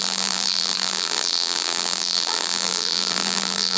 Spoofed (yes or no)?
yes